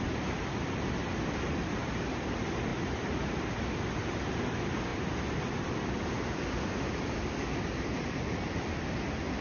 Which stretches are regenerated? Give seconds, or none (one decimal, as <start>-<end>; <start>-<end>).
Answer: 1.0-2.0; 2.7-4.3